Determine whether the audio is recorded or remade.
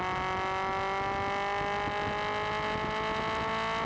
recorded